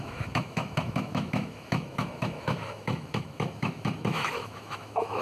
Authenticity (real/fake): fake